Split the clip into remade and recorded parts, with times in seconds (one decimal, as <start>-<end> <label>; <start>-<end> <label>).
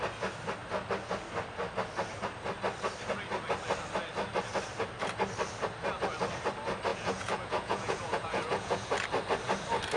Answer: 0.0-6.9 recorded; 6.9-8.9 remade; 8.9-10.0 recorded